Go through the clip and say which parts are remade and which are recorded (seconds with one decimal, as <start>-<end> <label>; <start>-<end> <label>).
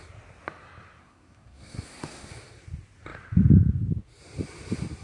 0.0-1.0 recorded; 1.0-2.3 remade; 2.3-5.0 recorded